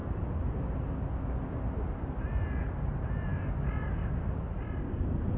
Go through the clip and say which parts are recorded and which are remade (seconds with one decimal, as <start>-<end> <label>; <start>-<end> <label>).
0.0-5.4 recorded